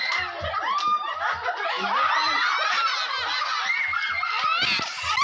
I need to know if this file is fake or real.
real